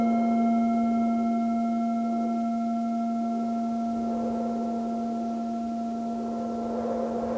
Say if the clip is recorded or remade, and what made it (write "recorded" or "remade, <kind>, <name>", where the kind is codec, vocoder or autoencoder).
recorded